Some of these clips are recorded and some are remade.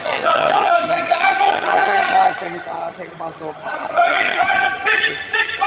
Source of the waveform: remade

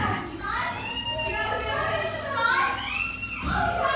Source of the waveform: recorded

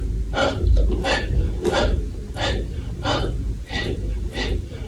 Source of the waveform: recorded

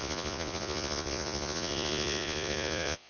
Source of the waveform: remade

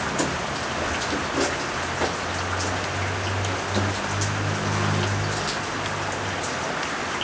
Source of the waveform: recorded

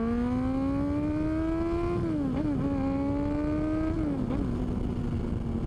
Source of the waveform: recorded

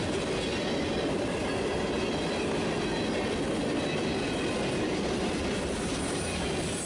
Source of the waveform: recorded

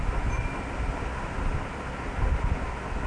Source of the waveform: recorded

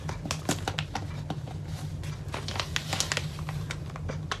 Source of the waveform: recorded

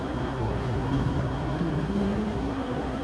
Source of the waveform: remade